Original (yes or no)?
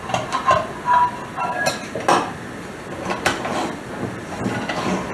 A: yes